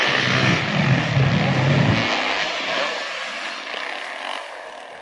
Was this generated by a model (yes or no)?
no